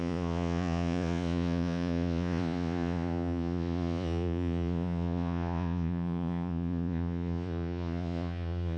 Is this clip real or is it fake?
fake